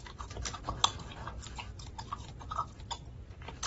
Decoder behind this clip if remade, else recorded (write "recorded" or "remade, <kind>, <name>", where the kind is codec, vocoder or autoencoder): recorded